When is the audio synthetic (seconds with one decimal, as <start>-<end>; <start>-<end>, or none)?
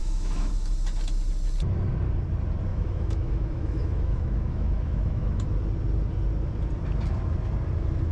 0.0-0.5; 2.7-5.5